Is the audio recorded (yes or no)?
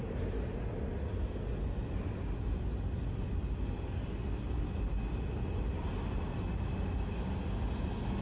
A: yes